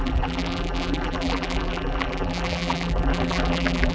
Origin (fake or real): fake